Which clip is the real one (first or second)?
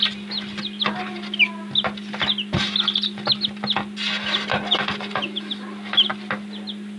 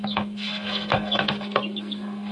first